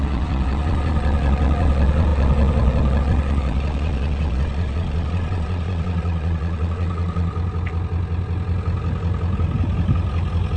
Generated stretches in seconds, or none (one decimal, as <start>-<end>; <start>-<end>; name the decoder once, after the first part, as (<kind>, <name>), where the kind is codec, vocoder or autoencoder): 0.0-7.3 (vocoder, Vocos)